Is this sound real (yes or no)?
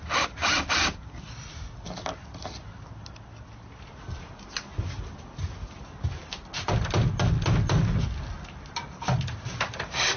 yes